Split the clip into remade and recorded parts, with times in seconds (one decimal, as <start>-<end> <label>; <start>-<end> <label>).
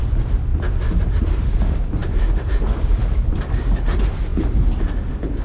0.0-0.5 remade; 0.5-1.2 recorded; 1.2-4.3 remade; 4.3-4.8 recorded; 4.8-5.4 remade